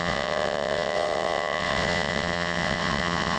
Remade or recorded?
remade